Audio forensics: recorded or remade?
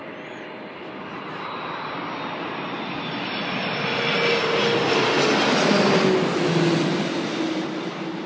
recorded